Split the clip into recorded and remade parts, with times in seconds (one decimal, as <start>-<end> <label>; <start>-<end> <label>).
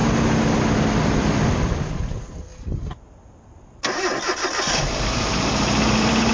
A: 0.0-1.1 recorded; 1.1-2.5 remade; 2.5-4.6 recorded; 4.6-6.3 remade